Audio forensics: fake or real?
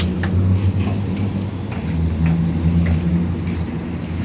real